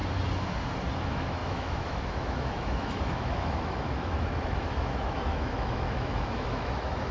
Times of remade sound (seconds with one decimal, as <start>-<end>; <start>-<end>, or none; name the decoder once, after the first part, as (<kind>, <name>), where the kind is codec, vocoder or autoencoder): 1.0-7.1 (autoencoder, DAC-VAE)